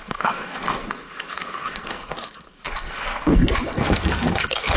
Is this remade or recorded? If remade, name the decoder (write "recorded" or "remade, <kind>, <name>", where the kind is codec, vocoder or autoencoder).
remade, codec, SNAC